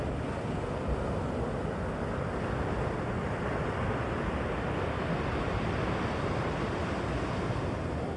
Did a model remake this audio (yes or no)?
no